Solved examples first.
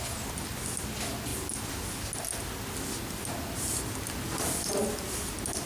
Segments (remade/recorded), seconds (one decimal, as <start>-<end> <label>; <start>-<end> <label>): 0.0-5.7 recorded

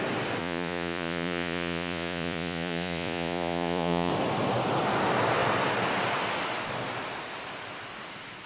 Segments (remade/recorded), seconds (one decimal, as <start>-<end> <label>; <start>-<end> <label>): 0.0-0.4 recorded; 0.4-4.1 remade; 4.1-8.5 recorded

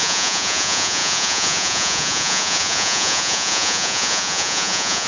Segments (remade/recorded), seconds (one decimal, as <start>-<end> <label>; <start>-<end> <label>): 0.0-5.1 remade

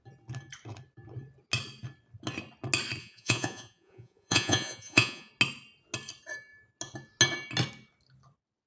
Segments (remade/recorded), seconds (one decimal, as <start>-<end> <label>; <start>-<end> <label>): 0.0-3.0 recorded; 3.0-5.3 remade; 5.3-8.7 recorded

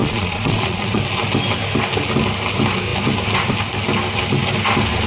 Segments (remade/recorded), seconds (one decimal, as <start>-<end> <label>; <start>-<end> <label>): 0.0-1.0 remade; 1.0-5.1 recorded

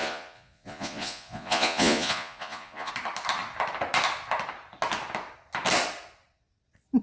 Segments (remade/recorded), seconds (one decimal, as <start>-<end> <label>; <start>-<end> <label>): 0.0-2.9 remade; 2.9-7.0 recorded